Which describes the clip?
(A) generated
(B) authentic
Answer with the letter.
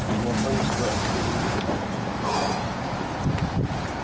B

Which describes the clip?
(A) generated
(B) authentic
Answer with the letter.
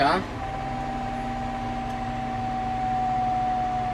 B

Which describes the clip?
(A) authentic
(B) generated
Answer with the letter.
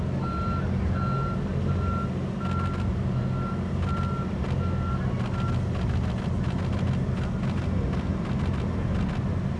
A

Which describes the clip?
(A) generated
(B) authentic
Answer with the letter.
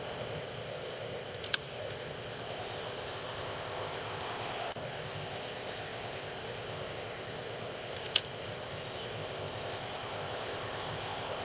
A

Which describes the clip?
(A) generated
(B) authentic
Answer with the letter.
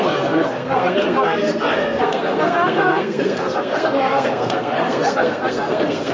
A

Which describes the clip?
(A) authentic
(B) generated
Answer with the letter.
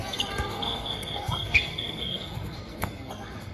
B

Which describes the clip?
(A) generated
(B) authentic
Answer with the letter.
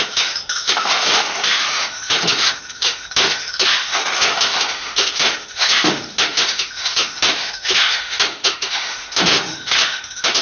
A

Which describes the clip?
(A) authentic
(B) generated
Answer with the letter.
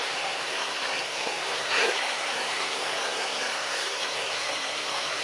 B